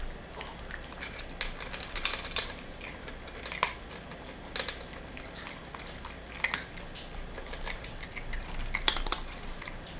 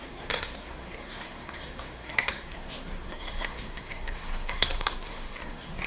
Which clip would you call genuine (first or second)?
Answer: first